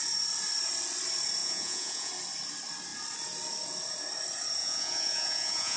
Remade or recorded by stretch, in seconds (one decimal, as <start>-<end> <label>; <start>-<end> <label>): 0.0-1.4 recorded; 1.4-2.1 remade; 2.1-4.6 recorded; 4.6-5.8 remade